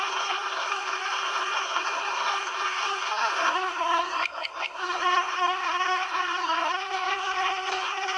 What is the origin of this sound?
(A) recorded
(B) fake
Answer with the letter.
B